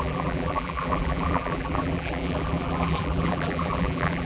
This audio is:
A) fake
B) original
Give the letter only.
A